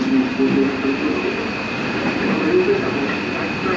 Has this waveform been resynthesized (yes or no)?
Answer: no